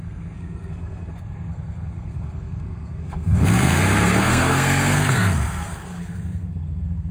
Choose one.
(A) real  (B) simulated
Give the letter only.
B